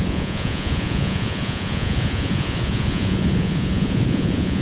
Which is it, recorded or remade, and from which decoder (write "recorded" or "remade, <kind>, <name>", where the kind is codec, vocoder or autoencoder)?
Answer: remade, vocoder, Vocos